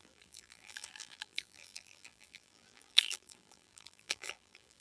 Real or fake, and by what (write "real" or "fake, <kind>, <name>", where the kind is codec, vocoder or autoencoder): fake, vocoder, BigVGAN v2